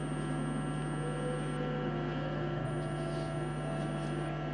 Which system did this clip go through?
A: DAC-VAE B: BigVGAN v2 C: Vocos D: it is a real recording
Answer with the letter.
D